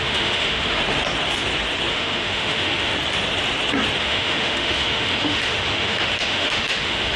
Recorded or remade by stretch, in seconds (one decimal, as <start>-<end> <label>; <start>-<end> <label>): 0.0-0.8 remade; 0.8-1.9 recorded; 1.9-2.9 remade; 2.9-4.0 recorded; 4.0-7.2 remade